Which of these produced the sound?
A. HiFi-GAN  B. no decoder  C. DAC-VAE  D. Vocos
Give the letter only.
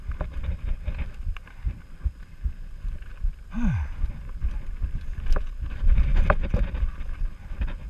B